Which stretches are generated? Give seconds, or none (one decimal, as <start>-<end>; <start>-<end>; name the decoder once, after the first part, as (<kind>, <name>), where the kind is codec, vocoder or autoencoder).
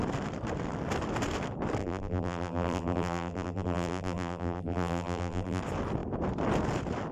1.8-5.6 (vocoder, BigVGAN v2)